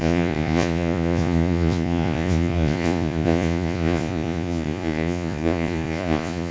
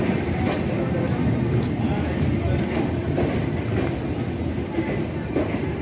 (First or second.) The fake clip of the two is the first